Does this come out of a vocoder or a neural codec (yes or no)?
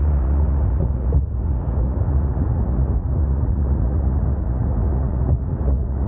yes